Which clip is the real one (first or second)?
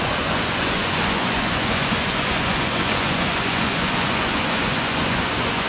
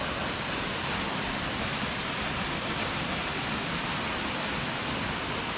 second